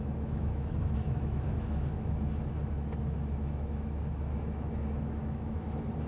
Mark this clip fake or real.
fake